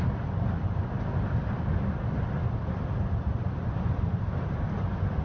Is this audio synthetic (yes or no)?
no